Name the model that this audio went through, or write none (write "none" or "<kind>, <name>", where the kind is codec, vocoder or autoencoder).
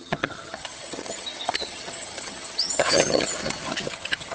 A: vocoder, HiFi-GAN